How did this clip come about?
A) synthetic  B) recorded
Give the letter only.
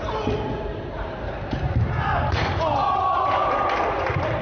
B